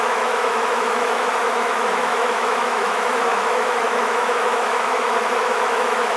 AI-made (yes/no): yes